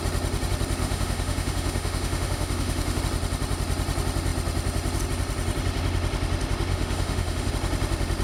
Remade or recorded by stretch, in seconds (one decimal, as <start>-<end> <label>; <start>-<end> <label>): 0.0-0.8 recorded; 0.8-3.0 remade; 3.0-6.7 recorded; 6.7-7.5 remade; 7.5-8.2 recorded